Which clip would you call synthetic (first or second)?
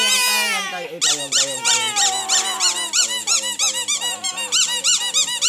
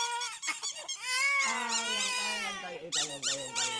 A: second